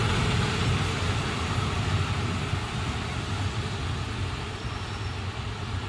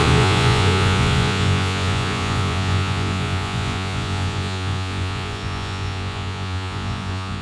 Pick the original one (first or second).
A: first